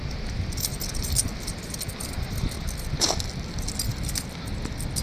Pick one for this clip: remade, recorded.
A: recorded